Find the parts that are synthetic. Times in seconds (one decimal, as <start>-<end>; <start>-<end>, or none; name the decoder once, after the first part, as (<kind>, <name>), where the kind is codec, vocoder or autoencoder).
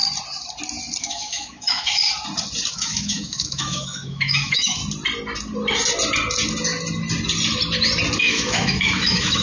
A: 1.0-2.0 (autoencoder, DAC-VAE); 2.7-4.8; 8.2-9.4